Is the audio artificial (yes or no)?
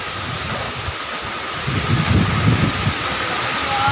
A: no